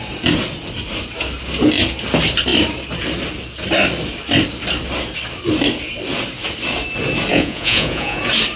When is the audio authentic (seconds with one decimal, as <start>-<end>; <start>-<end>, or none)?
0.0-7.3; 8.2-8.6